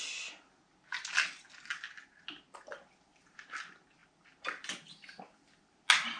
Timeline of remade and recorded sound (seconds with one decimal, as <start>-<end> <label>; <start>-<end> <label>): 0.0-6.2 recorded